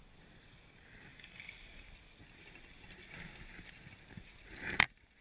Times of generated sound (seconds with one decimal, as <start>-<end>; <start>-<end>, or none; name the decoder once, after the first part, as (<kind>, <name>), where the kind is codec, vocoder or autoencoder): none

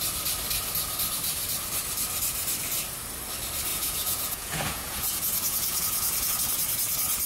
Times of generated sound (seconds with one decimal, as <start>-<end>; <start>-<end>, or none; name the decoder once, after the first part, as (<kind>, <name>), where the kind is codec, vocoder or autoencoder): 3.7-6.3 (vocoder, Vocos)

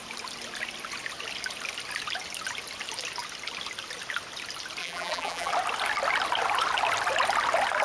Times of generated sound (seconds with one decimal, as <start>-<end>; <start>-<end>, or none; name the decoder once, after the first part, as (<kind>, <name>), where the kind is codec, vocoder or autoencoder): 4.8-5.5 (vocoder, BigVGAN v2)

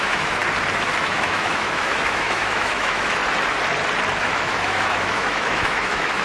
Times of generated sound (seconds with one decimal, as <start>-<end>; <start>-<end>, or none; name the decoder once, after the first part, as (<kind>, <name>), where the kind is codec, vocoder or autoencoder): 0.0-0.4 (autoencoder, DAC-VAE); 1.0-3.2; 4.2-6.2

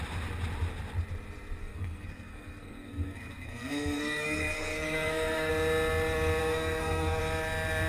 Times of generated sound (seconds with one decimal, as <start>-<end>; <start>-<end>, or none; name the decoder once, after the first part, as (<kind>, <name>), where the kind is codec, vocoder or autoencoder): 1.6-5.5 (codec, SNAC); 6.4-7.2

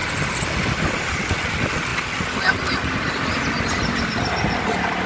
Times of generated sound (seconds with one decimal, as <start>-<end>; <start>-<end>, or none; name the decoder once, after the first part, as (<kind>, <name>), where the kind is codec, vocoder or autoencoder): none

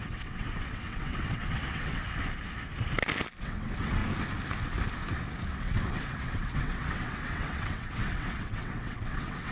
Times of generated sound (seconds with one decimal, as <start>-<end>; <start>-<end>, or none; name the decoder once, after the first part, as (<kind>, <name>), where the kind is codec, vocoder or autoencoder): 0.0-2.0 (vocoder, WaveNeXt); 3.4-4.0; 5.5-9.5